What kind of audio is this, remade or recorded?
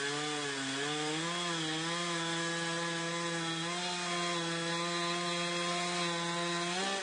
recorded